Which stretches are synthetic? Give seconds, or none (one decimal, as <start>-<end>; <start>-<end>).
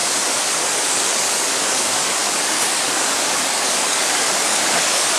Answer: 0.0-5.2